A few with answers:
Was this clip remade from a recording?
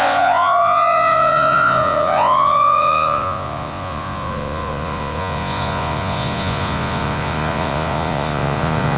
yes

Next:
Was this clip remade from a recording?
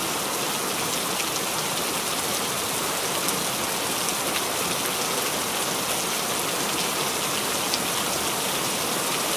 no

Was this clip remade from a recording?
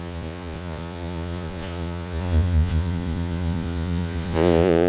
yes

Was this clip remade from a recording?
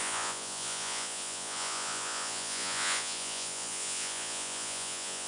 yes